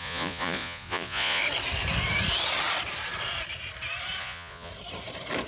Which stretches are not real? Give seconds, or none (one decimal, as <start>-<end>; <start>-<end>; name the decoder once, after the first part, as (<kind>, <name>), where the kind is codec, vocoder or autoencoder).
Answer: 0.0-1.4 (vocoder, Vocos); 4.2-4.7